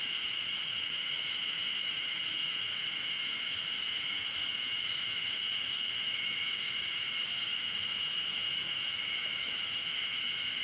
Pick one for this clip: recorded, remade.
remade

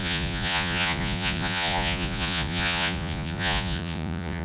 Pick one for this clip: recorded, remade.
remade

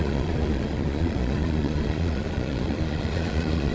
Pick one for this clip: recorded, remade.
remade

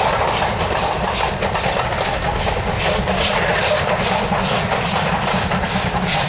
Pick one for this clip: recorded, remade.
recorded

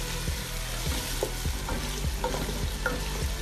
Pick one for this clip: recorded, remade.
recorded